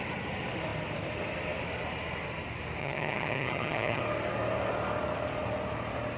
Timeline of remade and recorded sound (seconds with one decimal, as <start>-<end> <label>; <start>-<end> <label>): 0.0-2.8 recorded; 2.8-4.0 remade; 4.0-6.2 recorded